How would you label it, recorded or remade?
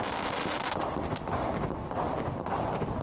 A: recorded